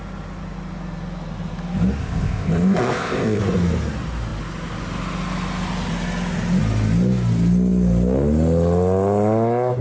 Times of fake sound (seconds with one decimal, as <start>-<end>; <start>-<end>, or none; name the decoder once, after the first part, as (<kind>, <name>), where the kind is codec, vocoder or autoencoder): 2.0-3.4 (codec, ZipCodec)